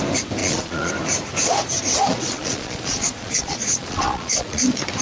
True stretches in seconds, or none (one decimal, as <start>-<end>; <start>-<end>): 0.0-0.4; 0.9-2.1; 4.6-5.0